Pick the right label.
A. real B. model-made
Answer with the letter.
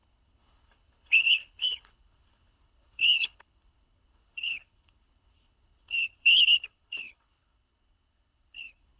B